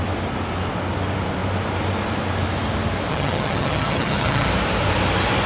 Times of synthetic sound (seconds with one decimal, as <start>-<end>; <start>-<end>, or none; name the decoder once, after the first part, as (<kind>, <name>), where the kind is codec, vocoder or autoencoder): 3.1-4.5 (vocoder, HiFi-GAN)